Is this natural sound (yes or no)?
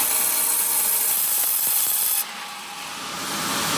yes